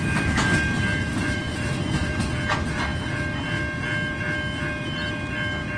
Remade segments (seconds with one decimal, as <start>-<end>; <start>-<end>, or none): 1.2-2.2